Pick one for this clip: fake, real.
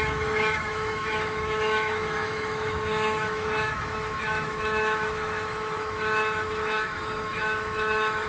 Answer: fake